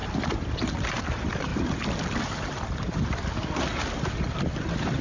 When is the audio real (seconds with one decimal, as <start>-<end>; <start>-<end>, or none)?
0.0-1.0; 1.5-2.2; 3.7-4.4